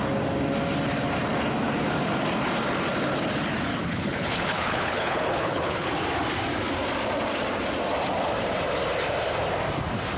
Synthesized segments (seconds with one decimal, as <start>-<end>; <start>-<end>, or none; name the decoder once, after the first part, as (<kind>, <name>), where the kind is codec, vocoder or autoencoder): 3.7-5.9 (codec, HILCodec)